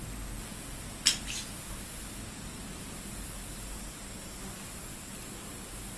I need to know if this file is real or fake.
real